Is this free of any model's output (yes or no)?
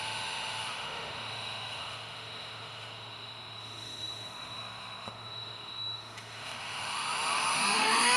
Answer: no